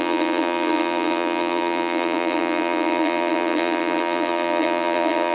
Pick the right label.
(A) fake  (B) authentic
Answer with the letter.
A